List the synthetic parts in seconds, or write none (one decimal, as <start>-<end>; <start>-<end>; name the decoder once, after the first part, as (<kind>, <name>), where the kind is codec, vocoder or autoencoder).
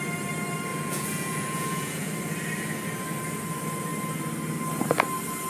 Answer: 0.7-2.1 (vocoder, Vocos)